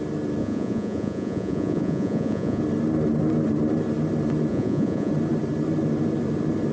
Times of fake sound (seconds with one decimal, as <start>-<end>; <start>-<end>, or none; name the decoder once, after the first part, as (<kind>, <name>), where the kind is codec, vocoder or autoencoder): 0.4-2.6 (vocoder, Vocos); 4.5-5.1

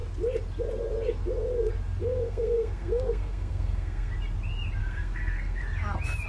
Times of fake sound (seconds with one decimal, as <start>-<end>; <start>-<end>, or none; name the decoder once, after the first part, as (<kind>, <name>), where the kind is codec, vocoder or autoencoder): 2.0-4.1 (codec, SNAC); 4.8-5.6

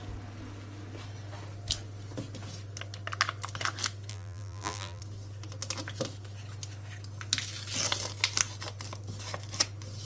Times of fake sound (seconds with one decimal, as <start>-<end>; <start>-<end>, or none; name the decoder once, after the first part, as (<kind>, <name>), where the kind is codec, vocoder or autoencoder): 4.1-5.0 (vocoder, BigVGAN v2)

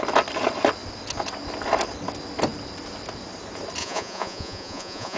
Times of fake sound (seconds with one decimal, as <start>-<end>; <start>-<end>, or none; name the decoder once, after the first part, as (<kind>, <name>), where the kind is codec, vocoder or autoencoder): 3.8-5.2 (vocoder, Vocos)